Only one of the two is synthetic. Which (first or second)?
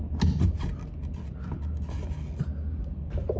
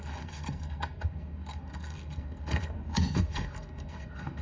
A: second